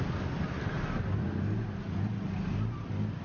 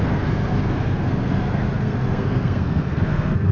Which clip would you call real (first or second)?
first